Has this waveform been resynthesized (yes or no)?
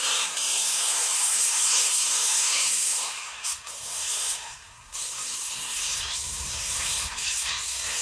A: yes